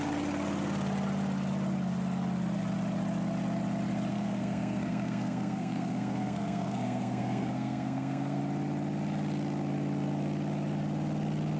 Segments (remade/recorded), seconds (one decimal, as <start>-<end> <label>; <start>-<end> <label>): 0.0-4.1 recorded; 4.1-8.4 remade; 8.4-11.6 recorded